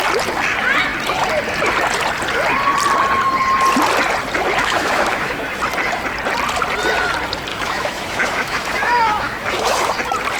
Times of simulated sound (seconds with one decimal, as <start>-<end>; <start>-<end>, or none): 4.6-5.6; 7.5-9.9

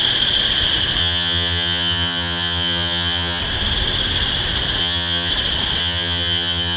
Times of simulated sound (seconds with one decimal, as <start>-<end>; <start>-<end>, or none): 1.0-3.4; 4.8-5.3; 5.8-6.8

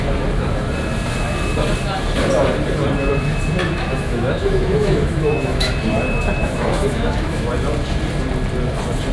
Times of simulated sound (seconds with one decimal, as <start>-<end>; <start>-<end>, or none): 3.6-5.7; 6.4-7.5